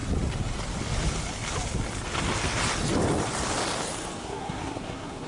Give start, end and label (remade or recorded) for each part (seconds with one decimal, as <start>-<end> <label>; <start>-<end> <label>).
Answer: 0.0-4.2 recorded; 4.2-5.3 remade